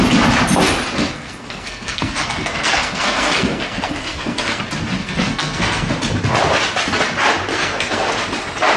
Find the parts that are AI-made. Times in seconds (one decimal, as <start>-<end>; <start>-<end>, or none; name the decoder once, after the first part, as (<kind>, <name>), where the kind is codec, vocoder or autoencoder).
1.0-4.6 (codec, SNAC); 5.0-5.9; 7.5-8.1